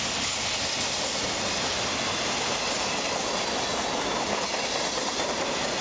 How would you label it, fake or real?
real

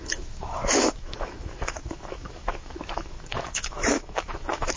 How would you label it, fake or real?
fake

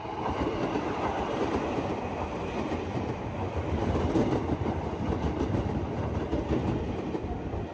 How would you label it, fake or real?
real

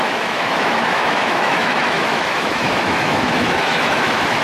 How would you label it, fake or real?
fake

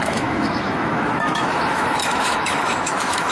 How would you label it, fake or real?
fake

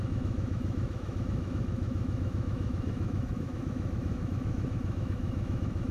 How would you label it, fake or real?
fake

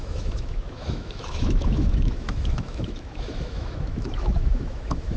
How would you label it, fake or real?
fake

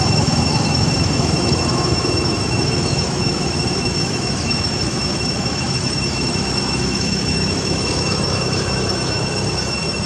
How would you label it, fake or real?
fake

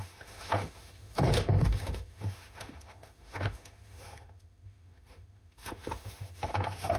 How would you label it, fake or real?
fake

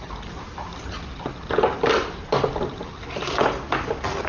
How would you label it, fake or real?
real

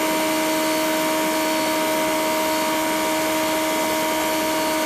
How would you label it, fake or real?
real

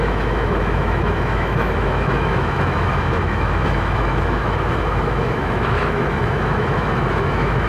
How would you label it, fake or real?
fake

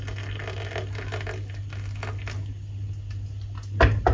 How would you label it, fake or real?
real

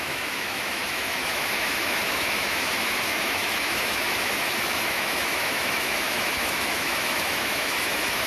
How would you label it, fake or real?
fake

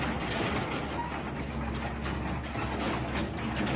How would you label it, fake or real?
real